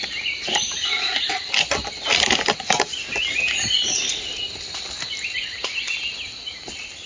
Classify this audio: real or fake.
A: real